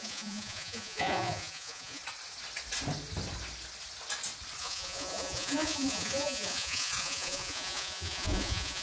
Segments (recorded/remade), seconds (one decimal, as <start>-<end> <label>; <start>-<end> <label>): 0.0-2.0 remade; 2.0-4.6 recorded; 4.6-8.8 remade